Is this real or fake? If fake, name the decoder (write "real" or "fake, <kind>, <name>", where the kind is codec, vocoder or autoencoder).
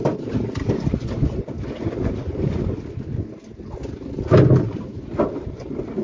real